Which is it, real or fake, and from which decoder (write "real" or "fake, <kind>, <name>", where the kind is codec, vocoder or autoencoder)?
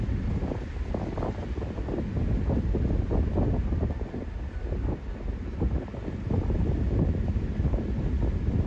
real